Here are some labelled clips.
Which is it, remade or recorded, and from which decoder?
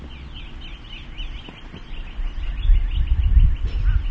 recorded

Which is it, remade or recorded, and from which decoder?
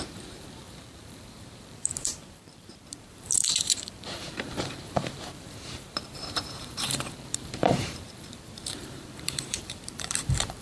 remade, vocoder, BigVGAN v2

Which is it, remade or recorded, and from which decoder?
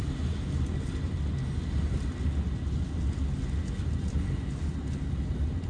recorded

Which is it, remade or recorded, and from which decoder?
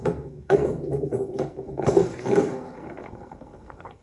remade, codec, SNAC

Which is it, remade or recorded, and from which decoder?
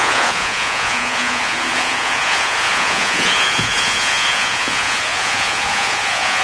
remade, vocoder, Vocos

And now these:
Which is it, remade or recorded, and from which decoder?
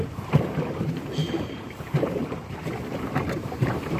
remade, vocoder, BigVGAN v2